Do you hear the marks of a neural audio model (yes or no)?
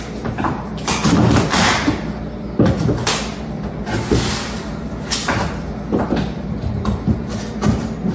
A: no